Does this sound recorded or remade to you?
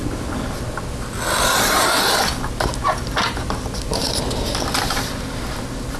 recorded